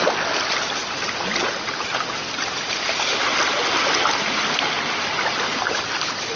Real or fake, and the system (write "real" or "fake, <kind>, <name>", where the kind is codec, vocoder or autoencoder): real